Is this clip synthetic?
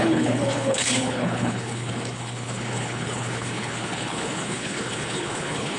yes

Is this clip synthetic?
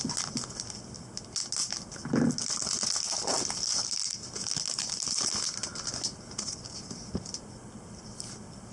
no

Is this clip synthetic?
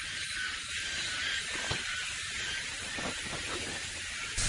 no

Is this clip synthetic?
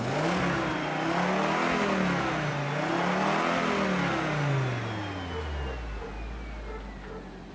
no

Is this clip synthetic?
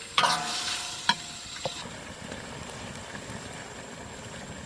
yes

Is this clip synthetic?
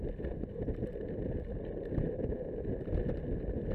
no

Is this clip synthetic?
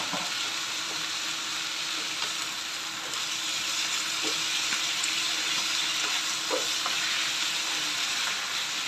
no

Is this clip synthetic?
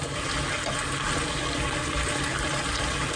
no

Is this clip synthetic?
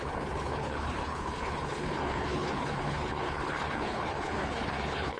yes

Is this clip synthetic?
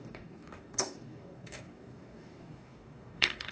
yes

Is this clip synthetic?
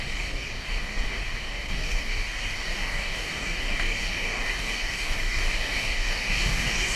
yes